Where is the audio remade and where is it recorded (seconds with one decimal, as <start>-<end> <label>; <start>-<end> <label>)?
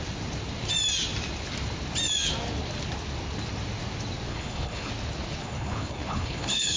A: 0.0-4.3 recorded; 4.3-4.9 remade; 4.9-5.4 recorded; 5.4-6.8 remade